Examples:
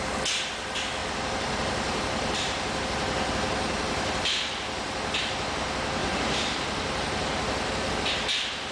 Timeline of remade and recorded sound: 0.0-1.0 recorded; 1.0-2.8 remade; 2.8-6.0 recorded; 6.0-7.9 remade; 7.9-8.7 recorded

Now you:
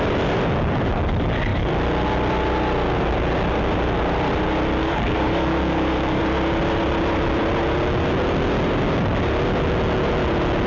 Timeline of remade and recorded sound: 0.0-4.8 recorded; 4.8-6.2 remade; 6.2-10.7 recorded

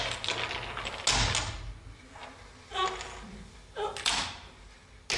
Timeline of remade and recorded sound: 0.0-5.2 recorded

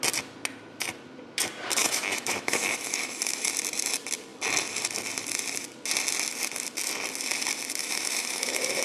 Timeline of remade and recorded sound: 0.0-1.8 recorded; 1.8-3.5 remade; 3.5-7.8 recorded; 7.8-8.8 remade

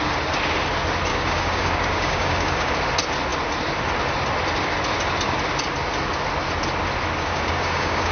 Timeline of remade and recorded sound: 0.0-1.1 recorded; 1.1-2.7 remade; 2.7-7.2 recorded; 7.2-8.1 remade

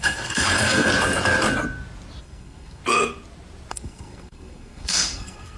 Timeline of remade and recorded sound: 0.0-0.9 remade; 0.9-2.2 recorded; 2.2-2.8 remade; 2.8-3.7 recorded; 3.7-5.6 remade

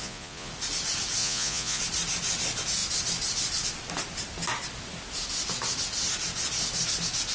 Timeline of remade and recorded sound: 0.0-0.5 remade; 0.5-1.2 recorded; 1.2-1.8 remade; 1.8-7.3 recorded

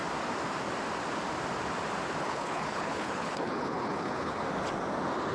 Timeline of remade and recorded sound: 0.0-2.2 recorded; 2.2-4.4 remade; 4.4-5.3 recorded